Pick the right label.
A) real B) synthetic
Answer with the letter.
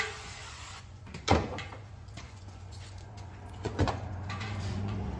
B